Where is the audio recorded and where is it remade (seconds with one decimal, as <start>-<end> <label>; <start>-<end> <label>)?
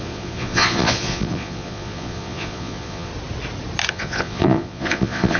0.0-3.1 remade; 3.1-3.9 recorded; 3.9-5.4 remade